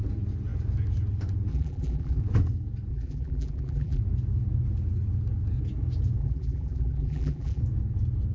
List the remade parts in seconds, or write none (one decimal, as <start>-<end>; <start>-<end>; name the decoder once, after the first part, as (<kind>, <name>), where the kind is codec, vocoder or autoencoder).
1.5-2.2 (vocoder, BigVGAN v2); 2.9-4.0; 6.2-7.6